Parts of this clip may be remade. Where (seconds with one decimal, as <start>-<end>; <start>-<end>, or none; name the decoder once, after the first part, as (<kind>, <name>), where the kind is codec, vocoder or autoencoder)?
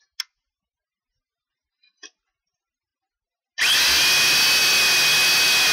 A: none